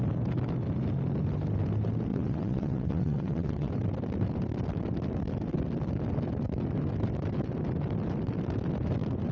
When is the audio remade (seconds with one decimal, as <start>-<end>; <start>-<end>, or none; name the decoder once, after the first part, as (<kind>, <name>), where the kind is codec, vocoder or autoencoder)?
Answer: 2.1-3.7 (vocoder, WaveNeXt)